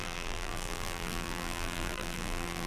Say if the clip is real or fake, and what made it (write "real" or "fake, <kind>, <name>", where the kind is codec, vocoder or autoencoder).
fake, vocoder, BigVGAN v2